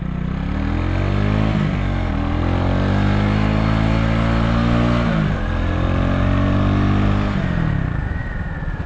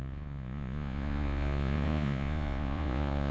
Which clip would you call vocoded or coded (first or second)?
second